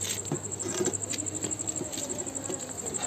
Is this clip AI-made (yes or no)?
no